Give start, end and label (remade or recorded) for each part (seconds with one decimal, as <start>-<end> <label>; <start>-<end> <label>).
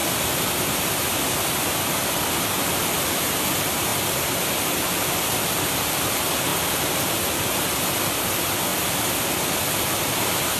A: 0.0-2.4 remade; 2.4-3.9 recorded; 3.9-4.5 remade; 4.5-10.6 recorded